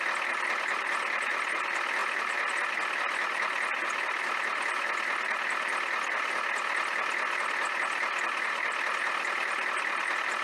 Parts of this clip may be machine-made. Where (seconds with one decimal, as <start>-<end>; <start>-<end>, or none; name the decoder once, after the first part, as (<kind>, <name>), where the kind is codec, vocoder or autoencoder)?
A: none